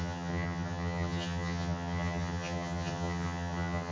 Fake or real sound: fake